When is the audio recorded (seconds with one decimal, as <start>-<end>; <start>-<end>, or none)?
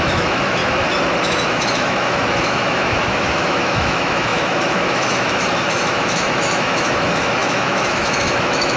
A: 0.6-1.2